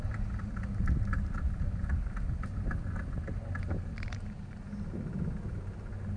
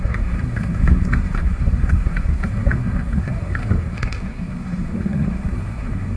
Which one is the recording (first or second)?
first